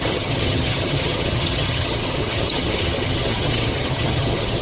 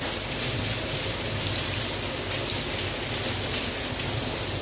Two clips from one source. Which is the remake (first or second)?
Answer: first